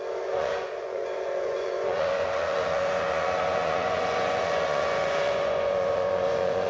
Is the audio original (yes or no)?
no